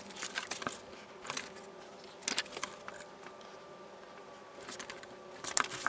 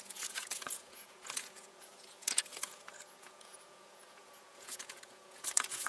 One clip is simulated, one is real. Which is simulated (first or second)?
second